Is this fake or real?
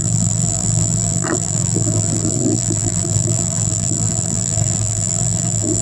fake